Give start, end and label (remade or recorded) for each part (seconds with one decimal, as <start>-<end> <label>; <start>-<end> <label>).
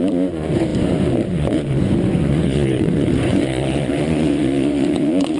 0.0-5.4 remade